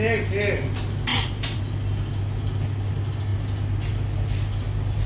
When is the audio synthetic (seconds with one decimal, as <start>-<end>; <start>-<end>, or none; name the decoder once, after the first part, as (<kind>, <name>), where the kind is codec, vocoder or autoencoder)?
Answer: 1.1-1.6 (vocoder, BigVGAN v2)